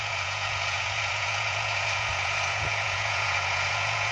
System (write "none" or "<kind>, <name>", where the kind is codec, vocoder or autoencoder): vocoder, Vocos